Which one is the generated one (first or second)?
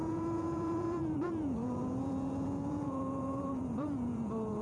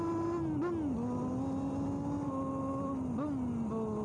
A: first